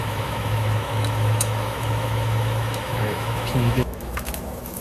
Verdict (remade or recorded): remade